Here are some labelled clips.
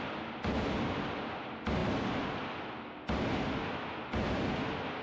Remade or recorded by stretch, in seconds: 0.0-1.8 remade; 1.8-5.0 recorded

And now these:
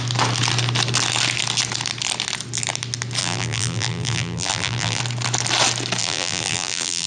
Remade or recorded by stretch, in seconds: 0.0-3.2 recorded; 3.2-5.0 remade; 5.0-6.0 recorded; 6.0-7.1 remade